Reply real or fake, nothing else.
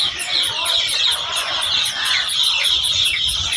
fake